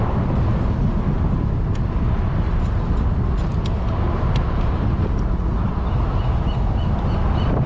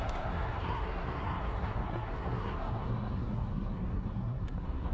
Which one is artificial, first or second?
second